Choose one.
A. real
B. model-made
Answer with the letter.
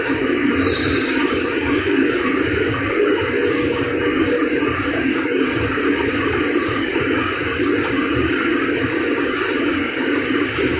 B